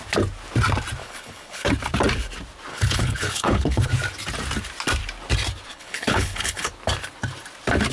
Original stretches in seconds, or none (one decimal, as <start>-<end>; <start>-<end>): 0.0-1.0; 1.7-2.7; 3.9-5.7; 6.7-7.9